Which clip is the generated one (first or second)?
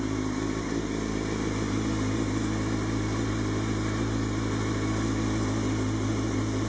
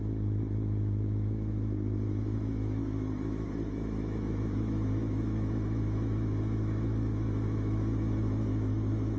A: second